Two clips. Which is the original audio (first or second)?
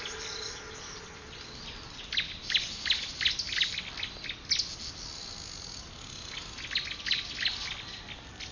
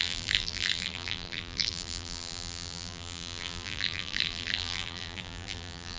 first